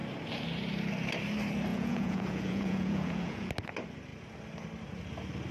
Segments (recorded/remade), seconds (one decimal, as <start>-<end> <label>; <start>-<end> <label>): 0.0-1.7 recorded; 1.7-3.5 remade; 3.5-5.5 recorded